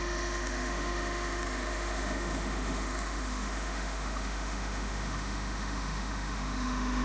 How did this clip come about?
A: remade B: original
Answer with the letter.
A